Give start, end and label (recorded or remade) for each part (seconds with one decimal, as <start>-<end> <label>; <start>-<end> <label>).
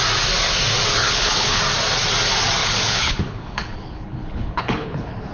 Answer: 0.0-1.0 recorded; 1.0-1.6 remade; 1.6-2.6 recorded; 2.6-5.3 remade